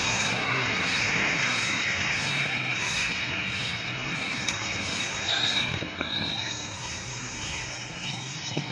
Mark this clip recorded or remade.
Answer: remade